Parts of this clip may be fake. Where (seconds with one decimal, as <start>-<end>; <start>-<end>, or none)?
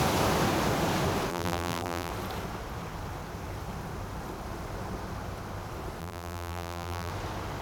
1.3-2.1; 6.0-7.1